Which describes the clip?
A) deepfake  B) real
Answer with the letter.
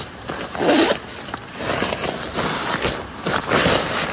B